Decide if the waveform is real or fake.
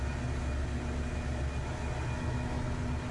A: real